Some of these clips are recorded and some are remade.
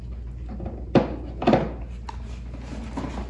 recorded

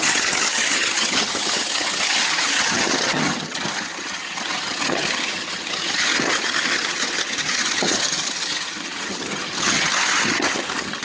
remade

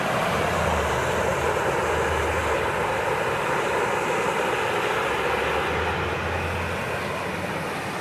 recorded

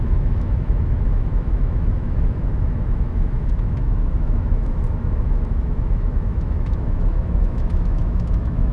remade